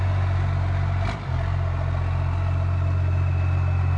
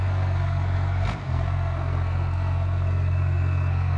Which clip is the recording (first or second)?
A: first